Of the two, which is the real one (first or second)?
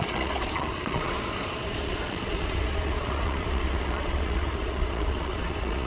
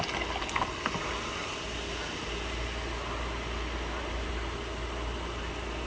second